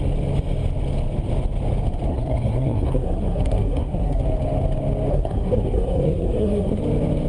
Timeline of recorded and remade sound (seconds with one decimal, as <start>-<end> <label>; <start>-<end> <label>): 0.0-2.1 recorded; 2.1-4.2 remade; 4.2-5.1 recorded; 5.1-6.8 remade; 6.8-7.3 recorded